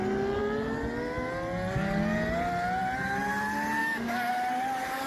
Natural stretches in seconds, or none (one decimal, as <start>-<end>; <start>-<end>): 0.0-3.8; 4.3-5.1